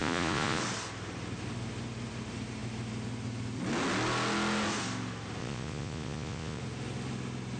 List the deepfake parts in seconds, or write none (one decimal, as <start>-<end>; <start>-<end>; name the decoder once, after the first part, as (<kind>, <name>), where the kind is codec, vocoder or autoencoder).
0.0-0.6 (vocoder, Vocos); 5.4-6.6

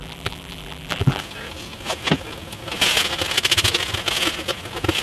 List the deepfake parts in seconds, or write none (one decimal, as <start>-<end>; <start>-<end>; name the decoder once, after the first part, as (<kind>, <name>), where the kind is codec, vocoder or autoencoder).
0.0-1.2 (vocoder, BigVGAN v2)

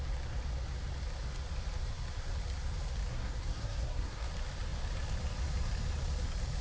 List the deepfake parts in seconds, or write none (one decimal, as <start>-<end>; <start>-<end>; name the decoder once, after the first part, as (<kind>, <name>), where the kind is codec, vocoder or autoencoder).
3.1-4.3 (codec, SNAC)

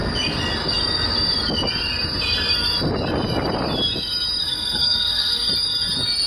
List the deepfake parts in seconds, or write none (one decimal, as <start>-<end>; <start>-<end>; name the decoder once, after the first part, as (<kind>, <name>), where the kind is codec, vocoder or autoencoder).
4.4-5.5 (codec, SNAC)

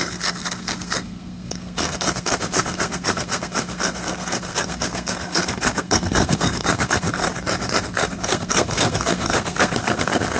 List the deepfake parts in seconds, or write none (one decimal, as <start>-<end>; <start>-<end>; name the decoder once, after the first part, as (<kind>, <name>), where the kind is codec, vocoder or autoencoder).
0.0-7.2 (codec, SNAC); 7.8-10.4